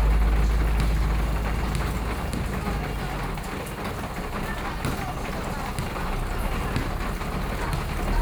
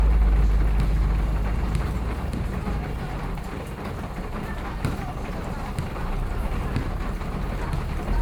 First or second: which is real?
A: first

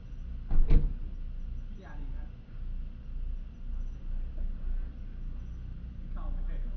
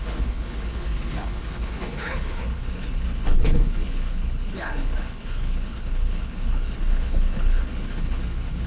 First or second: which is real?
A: first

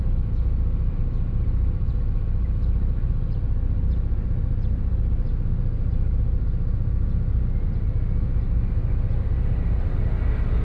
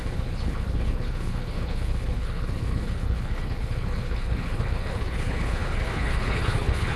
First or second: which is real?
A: first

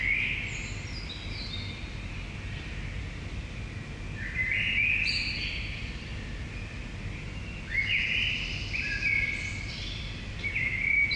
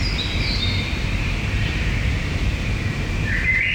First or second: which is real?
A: first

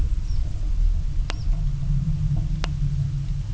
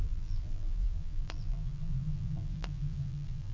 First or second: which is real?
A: first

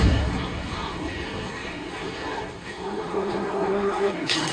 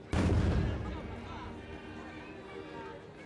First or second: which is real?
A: second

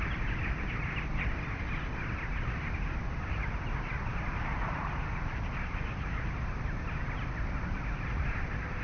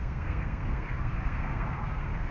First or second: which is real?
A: first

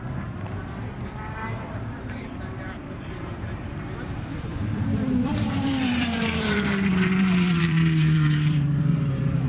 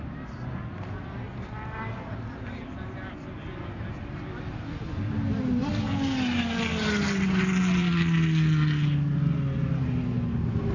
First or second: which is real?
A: second